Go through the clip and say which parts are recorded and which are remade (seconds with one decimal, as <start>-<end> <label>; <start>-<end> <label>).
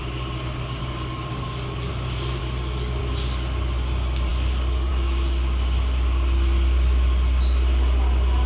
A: 0.0-0.8 recorded; 0.8-1.9 remade; 1.9-2.4 recorded; 2.4-3.0 remade; 3.0-4.3 recorded; 4.3-4.9 remade; 4.9-8.5 recorded